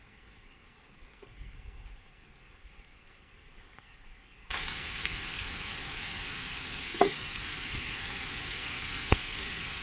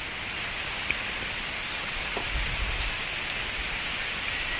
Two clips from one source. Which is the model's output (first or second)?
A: first